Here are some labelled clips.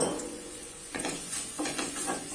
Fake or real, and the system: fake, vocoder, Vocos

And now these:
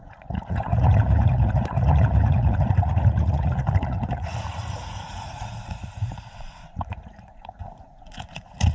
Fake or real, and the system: fake, vocoder, Vocos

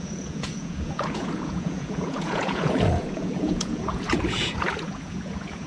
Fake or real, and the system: fake, vocoder, Vocos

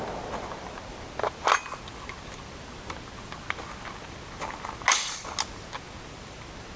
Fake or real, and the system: real